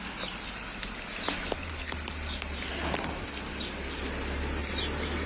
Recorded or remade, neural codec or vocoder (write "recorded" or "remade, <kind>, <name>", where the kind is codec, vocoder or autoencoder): recorded